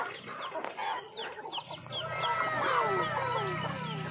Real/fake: real